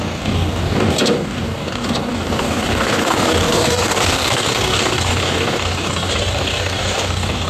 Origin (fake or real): fake